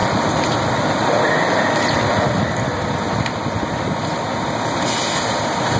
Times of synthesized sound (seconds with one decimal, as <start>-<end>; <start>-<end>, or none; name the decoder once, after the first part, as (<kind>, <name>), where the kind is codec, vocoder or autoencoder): 0.0-2.4 (vocoder, BigVGAN v2)

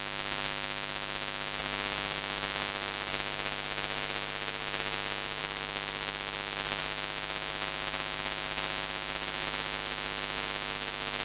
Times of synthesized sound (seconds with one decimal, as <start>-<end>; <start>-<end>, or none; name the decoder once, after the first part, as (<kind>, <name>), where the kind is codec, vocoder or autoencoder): 1.6-3.1 (codec, DAC)